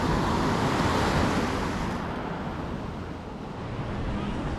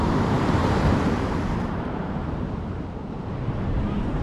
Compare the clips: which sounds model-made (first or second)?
second